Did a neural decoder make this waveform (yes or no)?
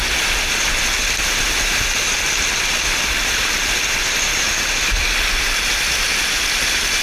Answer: no